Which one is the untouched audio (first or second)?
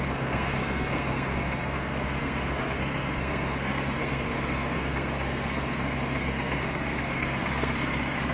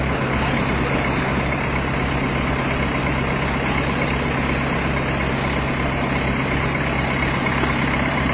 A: second